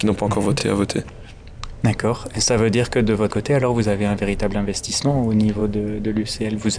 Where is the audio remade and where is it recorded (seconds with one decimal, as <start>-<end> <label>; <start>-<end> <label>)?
0.0-6.8 recorded